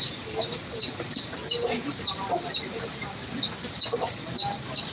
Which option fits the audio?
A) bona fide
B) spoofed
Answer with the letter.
A